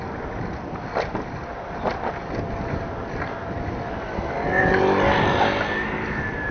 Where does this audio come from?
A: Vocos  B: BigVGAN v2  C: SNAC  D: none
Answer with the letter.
D